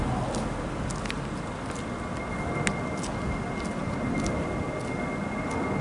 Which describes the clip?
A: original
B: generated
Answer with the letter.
A